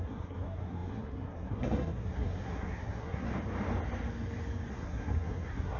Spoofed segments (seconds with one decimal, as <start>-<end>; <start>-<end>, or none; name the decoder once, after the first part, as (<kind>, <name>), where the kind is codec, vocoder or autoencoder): 0.0-3.3 (codec, SNAC); 4.7-5.8